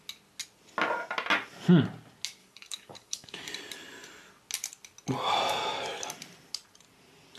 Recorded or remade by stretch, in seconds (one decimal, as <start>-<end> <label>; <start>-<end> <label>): 0.0-2.4 recorded; 2.4-3.5 remade; 3.5-7.4 recorded